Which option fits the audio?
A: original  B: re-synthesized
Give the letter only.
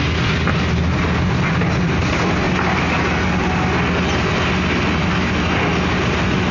A